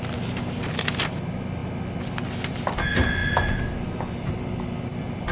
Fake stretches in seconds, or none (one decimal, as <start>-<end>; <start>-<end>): none